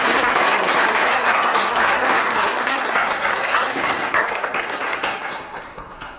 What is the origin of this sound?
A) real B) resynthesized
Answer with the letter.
B